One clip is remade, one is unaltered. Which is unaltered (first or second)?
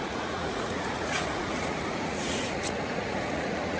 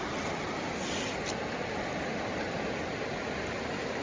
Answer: second